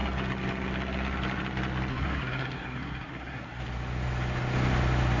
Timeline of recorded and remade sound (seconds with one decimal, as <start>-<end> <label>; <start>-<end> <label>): 0.0-1.9 recorded; 1.9-3.6 remade; 3.6-5.2 recorded